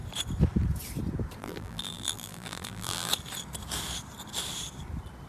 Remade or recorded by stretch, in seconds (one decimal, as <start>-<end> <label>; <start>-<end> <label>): 0.0-1.4 recorded; 1.4-3.1 remade; 3.1-5.3 recorded